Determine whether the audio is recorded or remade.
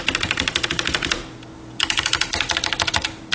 recorded